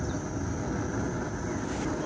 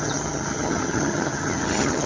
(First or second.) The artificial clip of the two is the second